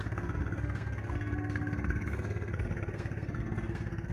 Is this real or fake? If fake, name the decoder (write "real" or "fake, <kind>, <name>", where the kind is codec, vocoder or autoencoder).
fake, codec, SNAC